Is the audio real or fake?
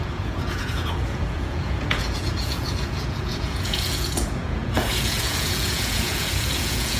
fake